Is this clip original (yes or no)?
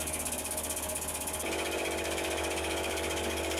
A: no